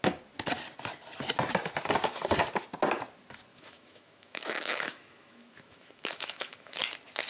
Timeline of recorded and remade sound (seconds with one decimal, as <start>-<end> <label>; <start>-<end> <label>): 0.0-3.5 recorded; 3.5-6.7 remade; 6.7-7.3 recorded